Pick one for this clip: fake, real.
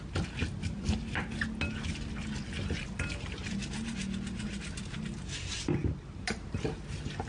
real